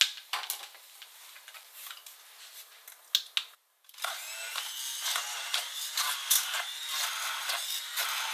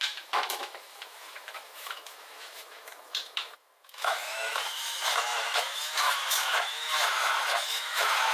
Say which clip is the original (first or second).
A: first